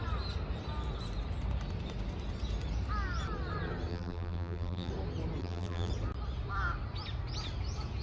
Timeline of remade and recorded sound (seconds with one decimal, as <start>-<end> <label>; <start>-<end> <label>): 0.0-3.9 recorded; 3.9-4.9 remade; 4.9-5.4 recorded; 5.4-5.9 remade; 5.9-8.0 recorded